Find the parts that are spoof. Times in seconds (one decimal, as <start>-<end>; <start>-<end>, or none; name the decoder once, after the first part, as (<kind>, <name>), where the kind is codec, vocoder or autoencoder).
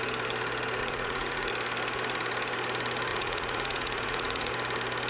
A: 0.8-1.5 (vocoder, Vocos); 3.1-4.5